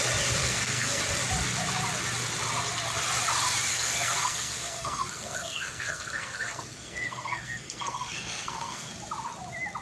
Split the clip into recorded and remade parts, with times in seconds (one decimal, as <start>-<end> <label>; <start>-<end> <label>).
0.0-0.4 recorded; 0.4-1.0 remade; 1.0-3.7 recorded; 3.7-8.9 remade; 8.9-9.8 recorded